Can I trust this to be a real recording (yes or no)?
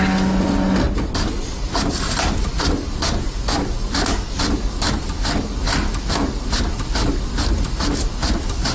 yes